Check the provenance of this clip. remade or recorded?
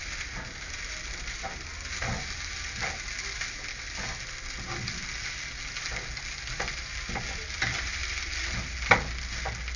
recorded